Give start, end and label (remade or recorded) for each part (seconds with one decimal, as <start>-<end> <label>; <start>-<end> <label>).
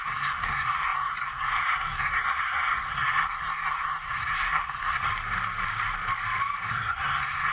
0.0-5.1 remade; 5.1-6.7 recorded; 6.7-7.5 remade